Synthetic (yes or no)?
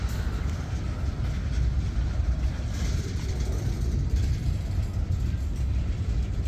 yes